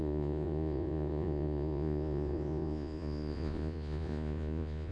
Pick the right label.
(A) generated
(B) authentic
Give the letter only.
A